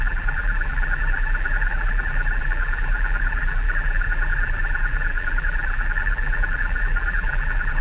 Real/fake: fake